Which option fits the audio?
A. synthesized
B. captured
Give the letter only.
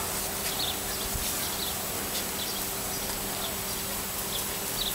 B